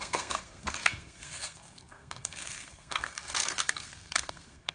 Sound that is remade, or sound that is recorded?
remade